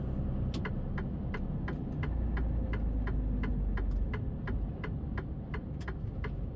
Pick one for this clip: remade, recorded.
recorded